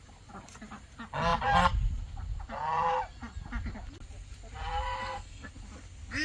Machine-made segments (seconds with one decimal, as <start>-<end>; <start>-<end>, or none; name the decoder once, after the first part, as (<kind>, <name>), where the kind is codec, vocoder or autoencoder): 5.0-5.5 (codec, SNAC)